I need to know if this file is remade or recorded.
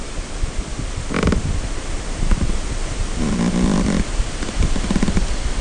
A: remade